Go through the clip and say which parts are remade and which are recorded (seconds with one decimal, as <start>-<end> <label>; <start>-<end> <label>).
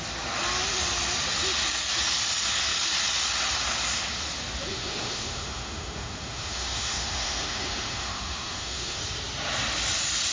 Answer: 0.0-4.7 recorded; 4.7-9.0 remade; 9.0-10.3 recorded